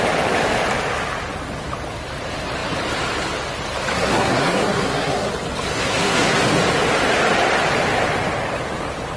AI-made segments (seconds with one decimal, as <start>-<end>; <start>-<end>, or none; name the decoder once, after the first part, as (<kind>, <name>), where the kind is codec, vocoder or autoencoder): 3.9-5.3 (codec, SNAC); 5.7-6.4